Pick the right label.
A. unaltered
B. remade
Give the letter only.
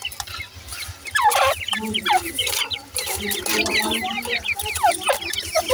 A